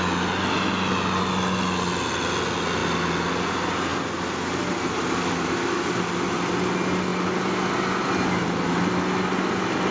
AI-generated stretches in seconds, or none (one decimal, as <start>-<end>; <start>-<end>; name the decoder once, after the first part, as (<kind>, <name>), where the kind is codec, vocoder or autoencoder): none